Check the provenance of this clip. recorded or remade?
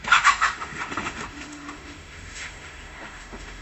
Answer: remade